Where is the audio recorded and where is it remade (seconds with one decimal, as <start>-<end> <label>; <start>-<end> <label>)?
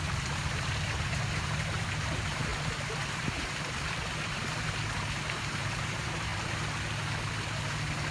0.0-6.3 remade; 6.3-8.1 recorded